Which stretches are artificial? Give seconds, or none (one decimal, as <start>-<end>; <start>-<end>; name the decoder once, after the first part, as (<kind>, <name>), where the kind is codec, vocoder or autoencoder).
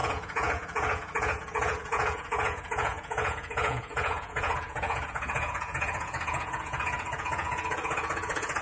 0.0-8.6 (vocoder, Vocos)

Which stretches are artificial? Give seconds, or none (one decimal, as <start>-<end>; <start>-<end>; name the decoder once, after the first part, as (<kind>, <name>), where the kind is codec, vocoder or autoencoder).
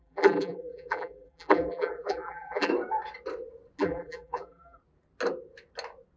0.0-2.7 (vocoder, BigVGAN v2); 3.8-4.8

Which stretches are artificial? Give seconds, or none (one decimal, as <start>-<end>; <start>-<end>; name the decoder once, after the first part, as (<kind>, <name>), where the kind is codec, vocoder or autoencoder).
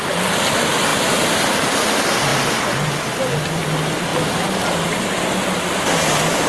0.9-1.8 (vocoder, BigVGAN v2)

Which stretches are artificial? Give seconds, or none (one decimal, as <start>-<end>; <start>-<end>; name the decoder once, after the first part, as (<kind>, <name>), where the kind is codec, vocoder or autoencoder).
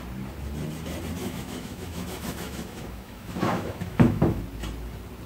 1.2-4.4 (autoencoder, DAC-VAE)